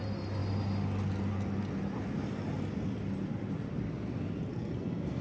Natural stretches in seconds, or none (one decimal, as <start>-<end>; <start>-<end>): 0.0-4.5

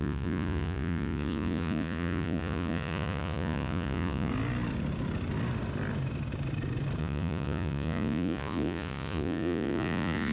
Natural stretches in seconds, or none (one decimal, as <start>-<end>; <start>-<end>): 4.3-7.0

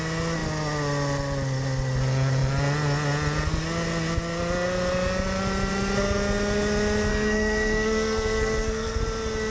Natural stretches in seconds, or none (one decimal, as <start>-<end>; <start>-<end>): 0.0-7.1; 9.0-9.5